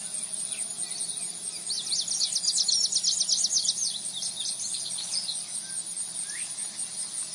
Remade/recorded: recorded